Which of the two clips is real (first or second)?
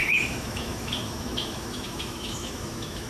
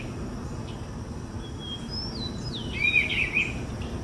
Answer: second